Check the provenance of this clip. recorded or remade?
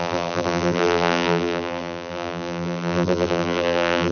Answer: remade